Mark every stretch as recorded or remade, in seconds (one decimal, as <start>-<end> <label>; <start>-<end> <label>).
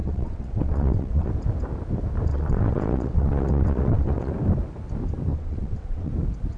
0.0-1.3 remade; 1.3-2.3 recorded; 2.3-4.3 remade; 4.3-5.3 recorded; 5.3-6.1 remade; 6.1-6.6 recorded